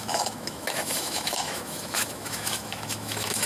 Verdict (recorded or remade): remade